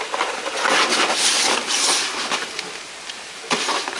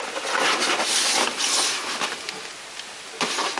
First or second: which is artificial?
first